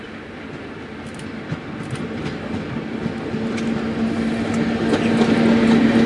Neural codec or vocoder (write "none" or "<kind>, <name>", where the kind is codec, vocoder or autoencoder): none